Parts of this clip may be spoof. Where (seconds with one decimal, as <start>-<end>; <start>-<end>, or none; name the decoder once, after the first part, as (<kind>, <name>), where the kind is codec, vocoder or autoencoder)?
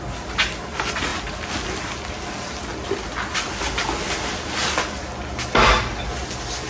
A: none